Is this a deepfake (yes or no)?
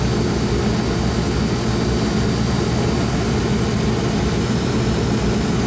no